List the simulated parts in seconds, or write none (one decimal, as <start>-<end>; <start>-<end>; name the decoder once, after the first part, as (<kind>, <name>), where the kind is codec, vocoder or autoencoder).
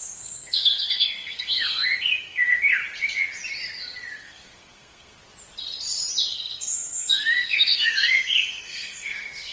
0.0-2.8 (codec, SNAC); 4.2-5.2; 6.3-9.5